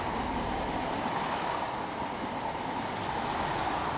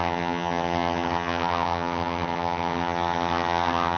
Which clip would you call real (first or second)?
first